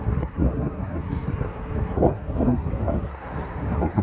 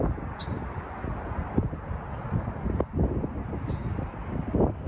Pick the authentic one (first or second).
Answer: second